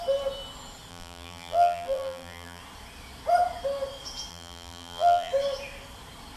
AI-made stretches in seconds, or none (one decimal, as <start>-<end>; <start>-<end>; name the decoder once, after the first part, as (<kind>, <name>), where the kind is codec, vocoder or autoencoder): 0.9-2.6 (vocoder, BigVGAN v2); 4.3-5.3